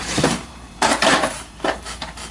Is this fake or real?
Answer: fake